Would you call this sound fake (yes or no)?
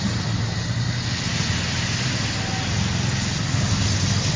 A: no